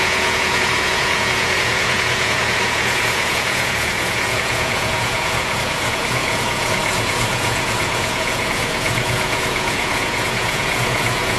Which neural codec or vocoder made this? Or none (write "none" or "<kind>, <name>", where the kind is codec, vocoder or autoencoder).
vocoder, Vocos